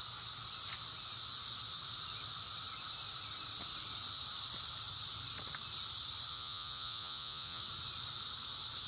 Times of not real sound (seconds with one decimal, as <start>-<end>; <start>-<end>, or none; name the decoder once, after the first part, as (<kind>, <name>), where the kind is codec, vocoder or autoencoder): 6.3-7.6 (vocoder, Vocos)